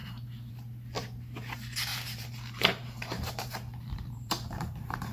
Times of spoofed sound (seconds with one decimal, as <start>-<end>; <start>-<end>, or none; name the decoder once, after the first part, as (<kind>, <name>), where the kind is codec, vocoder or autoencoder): 0.0-0.5 (vocoder, BigVGAN v2); 1.9-5.1